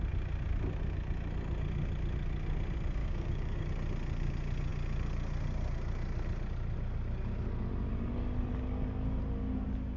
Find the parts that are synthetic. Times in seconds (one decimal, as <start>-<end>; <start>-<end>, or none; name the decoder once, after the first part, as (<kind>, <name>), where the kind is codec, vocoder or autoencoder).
3.0-3.7 (codec, DAC)